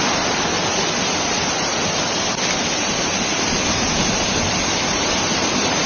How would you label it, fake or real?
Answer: real